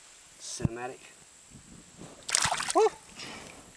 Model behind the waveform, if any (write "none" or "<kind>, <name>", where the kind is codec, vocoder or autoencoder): none